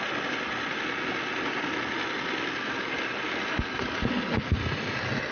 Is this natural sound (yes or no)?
yes